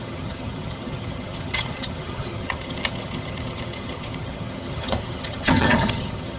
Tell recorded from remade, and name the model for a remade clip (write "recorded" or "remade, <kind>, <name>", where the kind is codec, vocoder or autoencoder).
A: remade, vocoder, HiFi-GAN